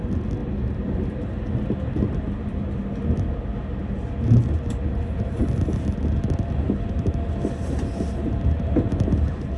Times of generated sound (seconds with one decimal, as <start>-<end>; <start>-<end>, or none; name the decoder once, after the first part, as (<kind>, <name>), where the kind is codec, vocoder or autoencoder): 0.4-1.0 (vocoder, BigVGAN v2)